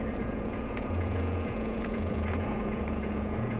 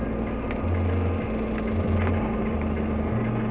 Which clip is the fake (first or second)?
first